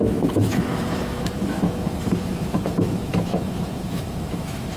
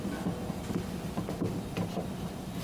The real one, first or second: second